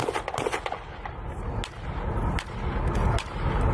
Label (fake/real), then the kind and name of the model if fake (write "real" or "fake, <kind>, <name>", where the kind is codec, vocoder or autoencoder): real